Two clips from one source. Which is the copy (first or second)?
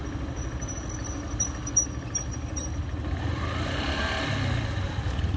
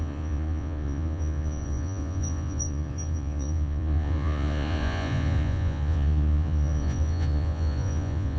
second